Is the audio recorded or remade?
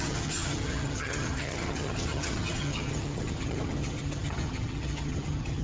remade